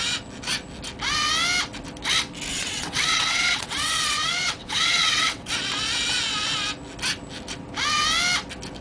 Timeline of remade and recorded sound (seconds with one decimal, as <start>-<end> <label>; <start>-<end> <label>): 0.0-2.5 recorded; 2.5-5.5 remade; 5.5-8.8 recorded